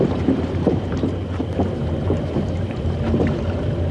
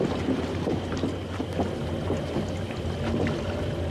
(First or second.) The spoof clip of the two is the first